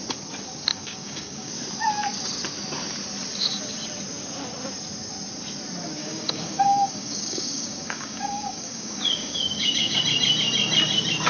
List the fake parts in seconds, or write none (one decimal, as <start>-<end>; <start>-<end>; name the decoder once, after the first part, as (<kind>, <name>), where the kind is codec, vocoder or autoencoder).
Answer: 0.7-1.5 (codec, DAC); 6.0-10.0